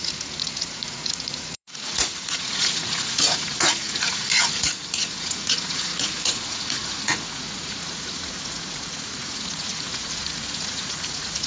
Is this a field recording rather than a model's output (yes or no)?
no